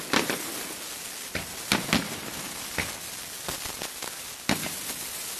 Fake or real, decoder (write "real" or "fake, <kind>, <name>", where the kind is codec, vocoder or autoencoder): real